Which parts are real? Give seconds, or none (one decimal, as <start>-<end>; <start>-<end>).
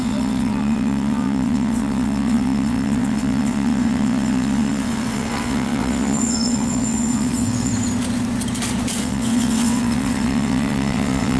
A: 7.7-9.0